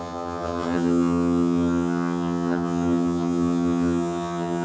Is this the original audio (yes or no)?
no